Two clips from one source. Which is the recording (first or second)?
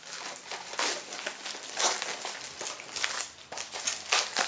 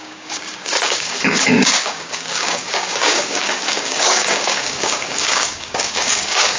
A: first